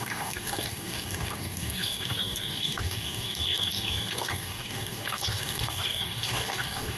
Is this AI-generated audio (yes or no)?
yes